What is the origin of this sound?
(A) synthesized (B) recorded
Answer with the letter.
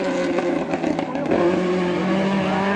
B